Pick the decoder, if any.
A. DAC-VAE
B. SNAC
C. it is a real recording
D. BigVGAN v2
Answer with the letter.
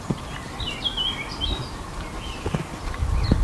C